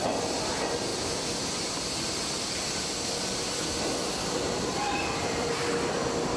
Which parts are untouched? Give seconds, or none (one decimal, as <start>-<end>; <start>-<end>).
0.0-6.4